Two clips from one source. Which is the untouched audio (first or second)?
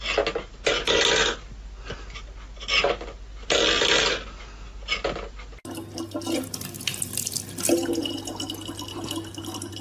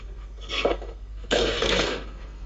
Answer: first